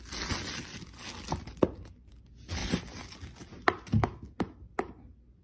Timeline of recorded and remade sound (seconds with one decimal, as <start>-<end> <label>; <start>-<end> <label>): 0.0-5.4 recorded